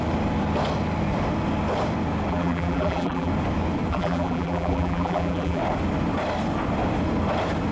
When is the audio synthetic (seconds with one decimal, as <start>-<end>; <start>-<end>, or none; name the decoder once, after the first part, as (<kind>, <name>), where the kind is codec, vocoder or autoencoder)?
2.3-3.3 (vocoder, BigVGAN v2); 3.9-5.6